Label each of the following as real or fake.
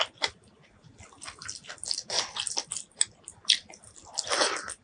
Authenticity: real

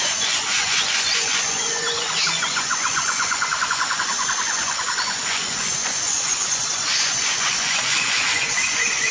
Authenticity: fake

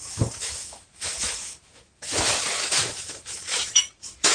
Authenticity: fake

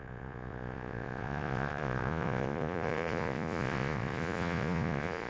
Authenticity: fake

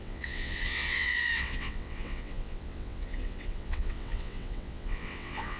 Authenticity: fake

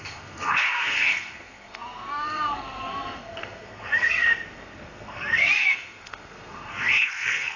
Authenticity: fake